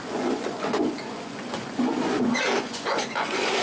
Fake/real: fake